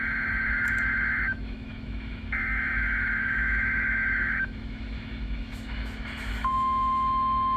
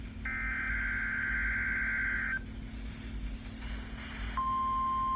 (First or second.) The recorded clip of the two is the second